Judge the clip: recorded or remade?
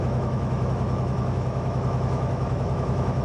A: remade